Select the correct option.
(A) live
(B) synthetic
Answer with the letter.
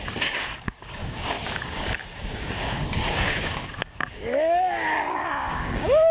B